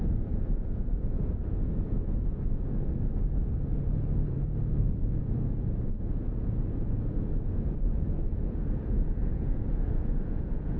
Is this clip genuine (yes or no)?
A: no